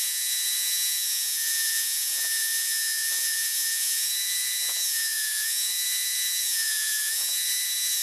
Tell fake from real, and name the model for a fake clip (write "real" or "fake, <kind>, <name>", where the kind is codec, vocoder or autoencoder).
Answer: fake, vocoder, Vocos